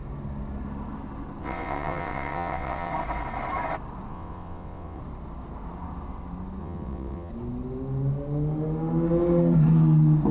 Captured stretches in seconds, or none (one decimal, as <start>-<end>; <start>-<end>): 0.0-1.4; 2.9-4.1; 5.0-6.6; 7.3-10.3